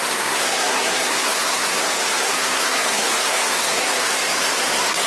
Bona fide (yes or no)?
no